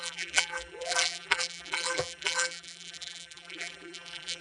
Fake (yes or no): yes